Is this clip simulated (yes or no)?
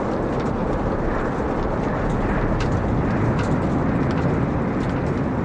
no